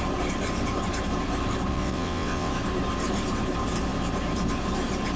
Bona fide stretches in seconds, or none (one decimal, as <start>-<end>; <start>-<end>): 0.0-1.7; 2.5-5.2